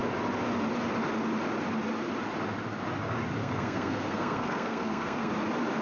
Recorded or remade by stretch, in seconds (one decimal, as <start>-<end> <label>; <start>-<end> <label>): 0.0-3.4 recorded; 3.4-5.3 remade; 5.3-5.8 recorded